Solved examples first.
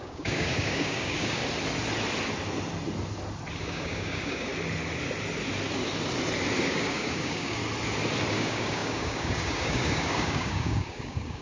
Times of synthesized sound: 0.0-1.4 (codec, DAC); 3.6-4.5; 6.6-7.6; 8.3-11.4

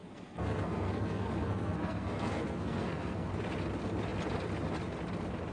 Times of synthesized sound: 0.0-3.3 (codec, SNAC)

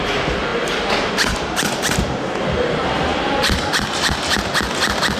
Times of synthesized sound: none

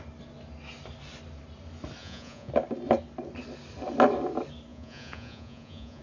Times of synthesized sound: 2.0-2.5 (vocoder, Vocos); 4.7-6.0

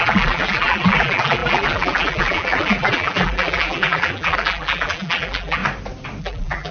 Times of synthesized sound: 0.0-5.6 (vocoder, BigVGAN v2); 6.2-6.7